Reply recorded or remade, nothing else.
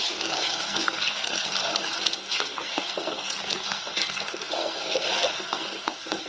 remade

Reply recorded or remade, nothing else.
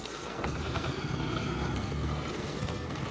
remade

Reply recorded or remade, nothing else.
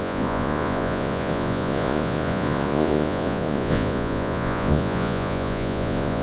remade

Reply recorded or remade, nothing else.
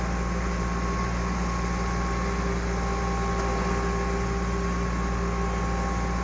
recorded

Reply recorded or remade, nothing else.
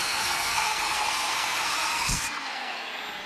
remade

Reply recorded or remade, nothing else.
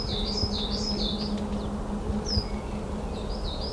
recorded